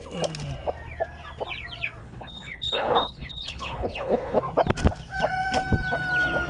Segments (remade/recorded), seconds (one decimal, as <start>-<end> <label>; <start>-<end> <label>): 0.0-2.0 recorded; 2.0-4.4 remade; 4.4-6.5 recorded